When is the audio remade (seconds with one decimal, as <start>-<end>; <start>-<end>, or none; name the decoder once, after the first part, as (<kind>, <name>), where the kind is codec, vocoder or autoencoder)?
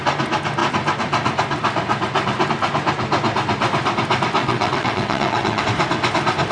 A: 4.4-5.6 (vocoder, WaveNeXt)